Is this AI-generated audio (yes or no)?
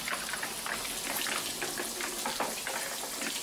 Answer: no